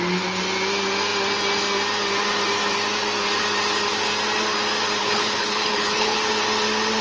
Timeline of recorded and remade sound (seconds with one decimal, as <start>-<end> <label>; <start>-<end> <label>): 0.0-5.0 recorded; 5.0-6.3 remade; 6.3-7.0 recorded